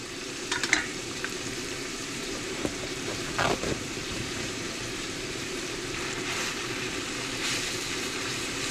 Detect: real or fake fake